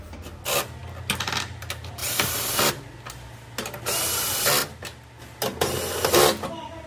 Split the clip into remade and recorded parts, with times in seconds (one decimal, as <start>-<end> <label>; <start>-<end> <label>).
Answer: 0.0-2.0 recorded; 2.0-2.6 remade; 2.6-6.9 recorded